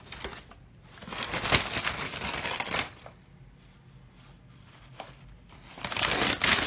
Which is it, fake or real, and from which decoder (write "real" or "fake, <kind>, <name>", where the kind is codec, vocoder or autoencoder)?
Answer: real